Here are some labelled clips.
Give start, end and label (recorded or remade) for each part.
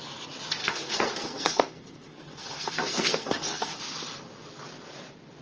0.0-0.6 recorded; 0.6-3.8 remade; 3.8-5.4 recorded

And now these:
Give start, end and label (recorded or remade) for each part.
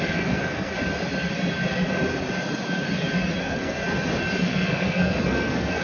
0.0-0.7 remade; 0.7-3.4 recorded; 3.4-3.8 remade; 3.8-4.4 recorded; 4.4-5.8 remade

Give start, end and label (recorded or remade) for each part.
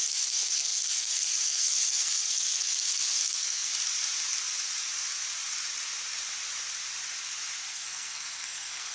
0.0-3.7 remade; 3.7-7.7 recorded; 7.7-8.9 remade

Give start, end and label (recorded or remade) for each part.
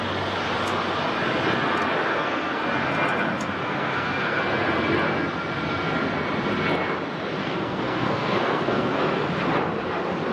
0.0-2.1 recorded; 2.1-2.6 remade; 2.6-3.6 recorded; 3.6-4.4 remade; 4.4-7.4 recorded; 7.4-9.0 remade; 9.0-10.3 recorded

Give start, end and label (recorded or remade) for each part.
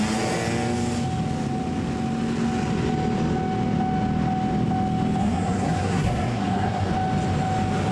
0.0-5.2 recorded; 5.2-6.9 remade; 6.9-7.9 recorded